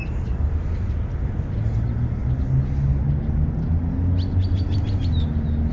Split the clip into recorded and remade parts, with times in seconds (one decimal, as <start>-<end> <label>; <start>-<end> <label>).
0.0-5.7 recorded